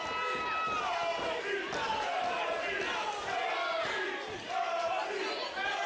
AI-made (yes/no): no